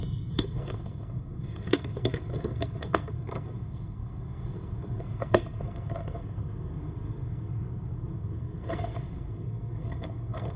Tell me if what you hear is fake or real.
fake